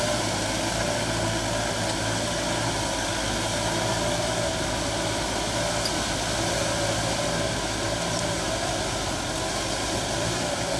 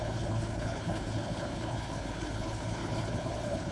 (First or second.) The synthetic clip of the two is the second